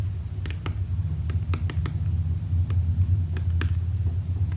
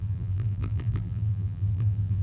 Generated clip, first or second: second